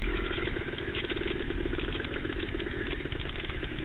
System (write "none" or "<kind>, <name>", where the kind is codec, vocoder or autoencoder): autoencoder, DAC-VAE